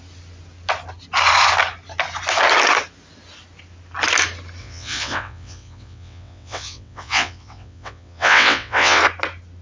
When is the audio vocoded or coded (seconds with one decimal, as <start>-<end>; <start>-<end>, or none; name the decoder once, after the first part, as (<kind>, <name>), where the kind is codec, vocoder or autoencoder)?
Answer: 4.6-9.0 (vocoder, WaveNeXt)